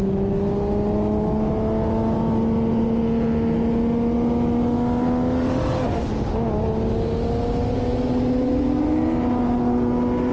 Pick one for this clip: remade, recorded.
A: recorded